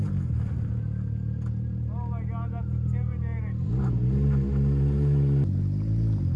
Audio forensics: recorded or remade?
recorded